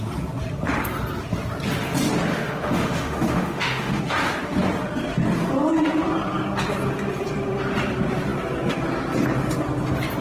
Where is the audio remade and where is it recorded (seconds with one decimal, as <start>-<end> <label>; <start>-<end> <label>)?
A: 0.0-2.3 recorded; 2.3-4.0 remade; 4.0-10.2 recorded